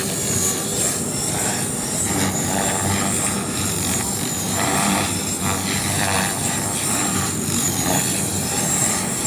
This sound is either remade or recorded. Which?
remade